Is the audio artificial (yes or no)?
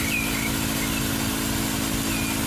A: no